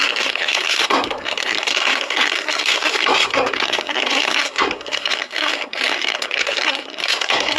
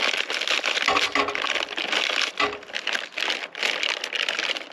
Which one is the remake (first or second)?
first